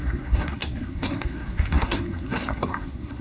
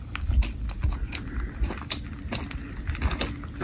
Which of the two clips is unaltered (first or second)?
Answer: second